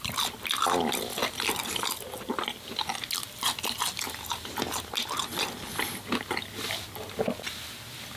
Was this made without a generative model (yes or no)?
yes